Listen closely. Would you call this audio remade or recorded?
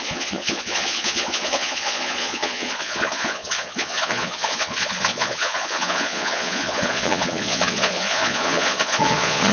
remade